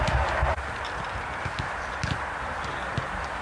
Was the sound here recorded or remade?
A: recorded